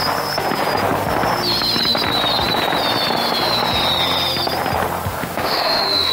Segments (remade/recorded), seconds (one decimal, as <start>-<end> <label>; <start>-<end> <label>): 0.0-5.1 recorded; 5.1-6.1 remade